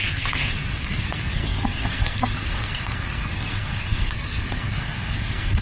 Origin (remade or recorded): remade